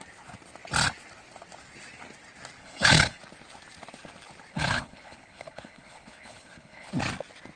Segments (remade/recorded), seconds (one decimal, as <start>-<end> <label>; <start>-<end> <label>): 0.0-2.6 recorded; 2.6-3.2 remade; 3.2-4.5 recorded; 4.5-6.9 remade; 6.9-7.6 recorded